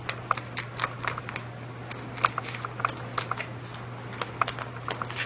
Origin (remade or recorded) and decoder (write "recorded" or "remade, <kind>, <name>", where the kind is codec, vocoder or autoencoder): recorded